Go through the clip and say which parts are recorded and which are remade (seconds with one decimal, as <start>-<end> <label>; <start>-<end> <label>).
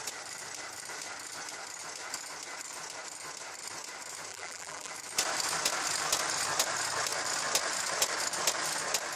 0.0-4.3 recorded; 4.3-4.9 remade; 4.9-9.2 recorded